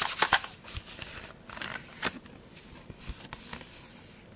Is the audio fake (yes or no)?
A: no